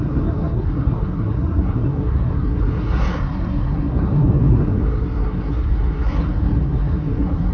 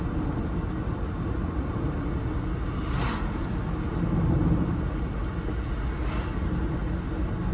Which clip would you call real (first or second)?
second